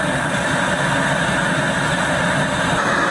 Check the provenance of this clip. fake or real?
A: real